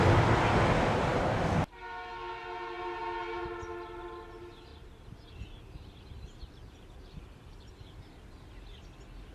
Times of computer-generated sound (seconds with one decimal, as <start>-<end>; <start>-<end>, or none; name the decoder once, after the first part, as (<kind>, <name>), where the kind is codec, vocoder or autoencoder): 4.7-7.8 (vocoder, BigVGAN v2)

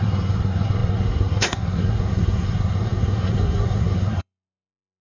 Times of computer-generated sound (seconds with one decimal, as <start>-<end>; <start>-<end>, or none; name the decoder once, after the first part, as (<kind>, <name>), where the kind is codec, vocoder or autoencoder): 0.0-5.0 (codec, SNAC)

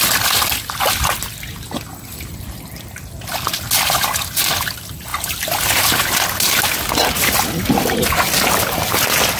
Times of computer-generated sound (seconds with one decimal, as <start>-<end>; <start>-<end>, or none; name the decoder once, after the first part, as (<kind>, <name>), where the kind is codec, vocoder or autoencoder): 5.1-6.1 (vocoder, BigVGAN v2)

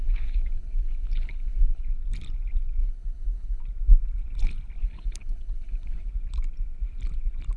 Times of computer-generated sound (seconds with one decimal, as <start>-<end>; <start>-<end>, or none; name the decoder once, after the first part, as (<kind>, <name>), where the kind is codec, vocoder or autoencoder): 0.0-1.8 (codec, HILCodec); 2.8-3.6; 4.8-6.1

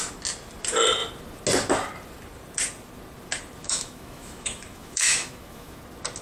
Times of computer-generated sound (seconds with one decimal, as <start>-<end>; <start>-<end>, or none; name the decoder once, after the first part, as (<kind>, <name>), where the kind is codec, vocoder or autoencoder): 3.6-5.8 (autoencoder, DAC-VAE)

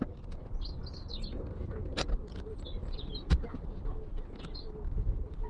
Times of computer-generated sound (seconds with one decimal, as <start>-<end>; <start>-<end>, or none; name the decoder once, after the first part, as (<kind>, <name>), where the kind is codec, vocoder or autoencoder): none